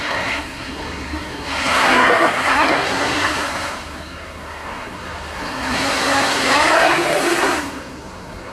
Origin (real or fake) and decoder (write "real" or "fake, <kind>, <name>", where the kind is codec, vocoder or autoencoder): fake, codec, SNAC